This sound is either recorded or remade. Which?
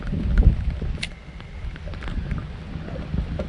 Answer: recorded